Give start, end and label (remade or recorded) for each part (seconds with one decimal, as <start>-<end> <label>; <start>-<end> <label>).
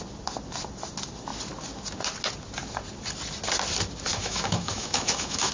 0.0-4.1 recorded; 4.1-5.5 remade